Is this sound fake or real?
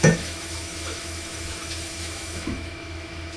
fake